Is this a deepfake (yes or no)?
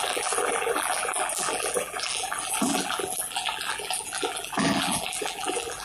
yes